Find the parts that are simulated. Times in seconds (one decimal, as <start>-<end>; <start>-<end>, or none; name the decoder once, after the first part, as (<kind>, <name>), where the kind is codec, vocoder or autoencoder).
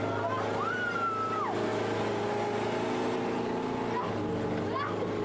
none